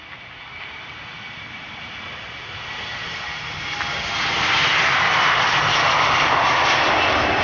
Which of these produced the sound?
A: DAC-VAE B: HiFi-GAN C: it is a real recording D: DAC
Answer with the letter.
C